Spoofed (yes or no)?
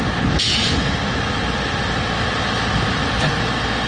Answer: no